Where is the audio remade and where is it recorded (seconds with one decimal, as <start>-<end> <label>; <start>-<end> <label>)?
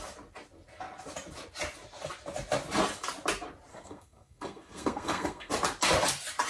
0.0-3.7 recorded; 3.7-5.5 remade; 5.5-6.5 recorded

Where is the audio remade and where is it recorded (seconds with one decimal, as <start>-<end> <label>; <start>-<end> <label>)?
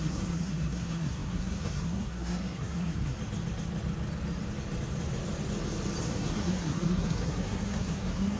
0.0-3.2 remade; 3.2-6.0 recorded; 6.0-8.4 remade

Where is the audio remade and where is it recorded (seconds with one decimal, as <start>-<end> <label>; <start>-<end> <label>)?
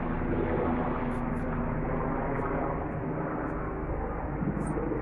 0.0-3.6 recorded; 3.6-4.2 remade; 4.2-5.0 recorded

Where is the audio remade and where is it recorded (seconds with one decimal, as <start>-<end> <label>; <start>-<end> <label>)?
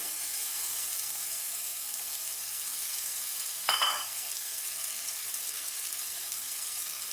0.0-7.1 remade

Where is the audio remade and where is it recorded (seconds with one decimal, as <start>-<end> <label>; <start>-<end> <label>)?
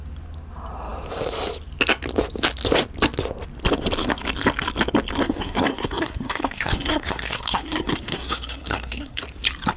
0.0-5.2 recorded; 5.2-9.2 remade; 9.2-9.8 recorded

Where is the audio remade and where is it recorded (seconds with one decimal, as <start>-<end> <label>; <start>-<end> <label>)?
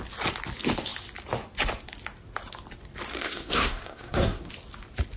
0.0-3.1 recorded; 3.1-4.5 remade; 4.5-5.2 recorded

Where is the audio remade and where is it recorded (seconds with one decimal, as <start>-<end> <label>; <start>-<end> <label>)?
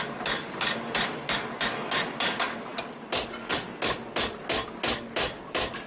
0.0-5.9 recorded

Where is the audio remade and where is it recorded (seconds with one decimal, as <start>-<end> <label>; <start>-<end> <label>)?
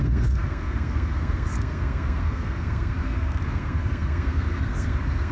0.0-5.3 remade